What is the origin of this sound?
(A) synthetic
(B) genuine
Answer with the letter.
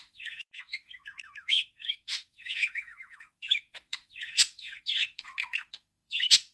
A